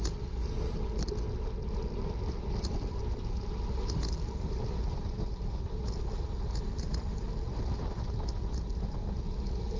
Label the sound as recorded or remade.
recorded